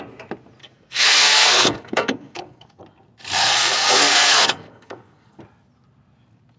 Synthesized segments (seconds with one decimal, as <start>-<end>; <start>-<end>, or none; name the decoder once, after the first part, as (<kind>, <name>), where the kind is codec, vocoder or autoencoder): 0.6-2.8 (codec, SNAC); 3.4-5.4